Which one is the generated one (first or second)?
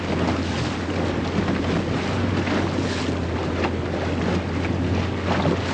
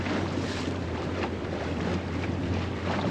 second